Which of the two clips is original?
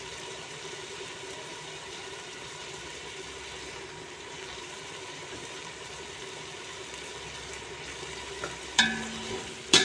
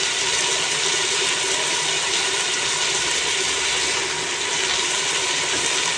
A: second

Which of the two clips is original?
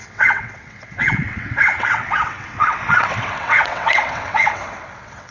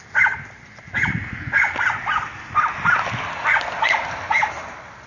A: second